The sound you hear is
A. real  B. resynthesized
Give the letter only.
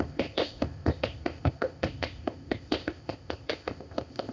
B